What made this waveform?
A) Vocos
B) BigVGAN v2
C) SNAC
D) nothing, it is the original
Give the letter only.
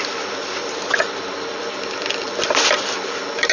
B